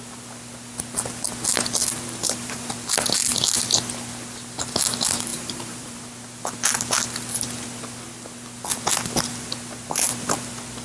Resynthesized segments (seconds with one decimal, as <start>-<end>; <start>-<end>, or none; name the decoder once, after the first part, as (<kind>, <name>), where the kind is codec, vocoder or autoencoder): 2.2-2.7 (vocoder, BigVGAN v2); 5.3-6.0